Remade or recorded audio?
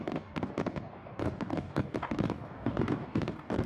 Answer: remade